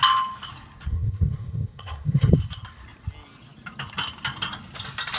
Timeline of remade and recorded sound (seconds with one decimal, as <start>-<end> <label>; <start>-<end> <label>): 0.0-0.9 recorded; 0.9-2.3 remade; 2.3-5.2 recorded